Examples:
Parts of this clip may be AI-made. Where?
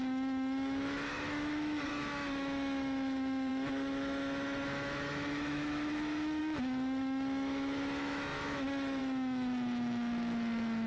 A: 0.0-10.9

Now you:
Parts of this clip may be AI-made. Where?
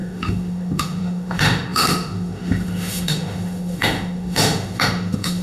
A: 0.0-5.4